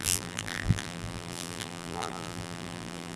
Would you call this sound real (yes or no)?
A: no